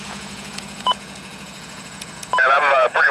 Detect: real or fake fake